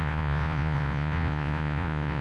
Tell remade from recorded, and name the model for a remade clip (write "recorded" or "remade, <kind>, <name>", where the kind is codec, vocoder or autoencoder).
remade, vocoder, Vocos